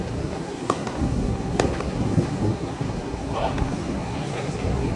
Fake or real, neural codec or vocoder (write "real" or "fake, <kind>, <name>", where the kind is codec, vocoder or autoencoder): fake, codec, SNAC